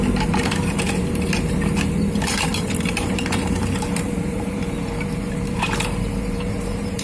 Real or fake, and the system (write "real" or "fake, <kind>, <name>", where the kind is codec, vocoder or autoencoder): fake, vocoder, BigVGAN v2